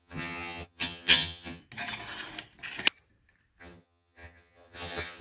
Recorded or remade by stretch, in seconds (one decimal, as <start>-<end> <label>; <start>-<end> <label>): 0.0-1.6 remade; 1.6-3.6 recorded; 3.6-5.2 remade